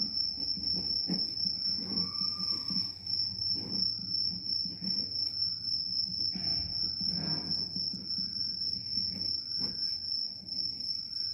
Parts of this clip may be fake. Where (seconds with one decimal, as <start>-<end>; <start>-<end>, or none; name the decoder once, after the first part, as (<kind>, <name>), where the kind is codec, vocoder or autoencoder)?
none